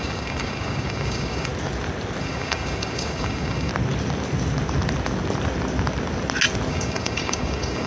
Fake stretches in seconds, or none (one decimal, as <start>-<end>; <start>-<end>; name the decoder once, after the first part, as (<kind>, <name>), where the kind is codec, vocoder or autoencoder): 0.0-1.5 (codec, DAC); 2.2-3.7; 6.7-7.9